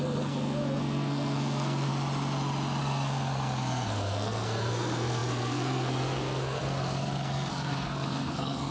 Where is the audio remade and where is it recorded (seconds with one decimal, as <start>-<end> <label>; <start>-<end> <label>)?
0.0-1.9 remade; 1.9-2.8 recorded; 2.8-8.7 remade